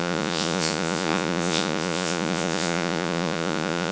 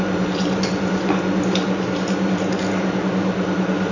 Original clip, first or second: second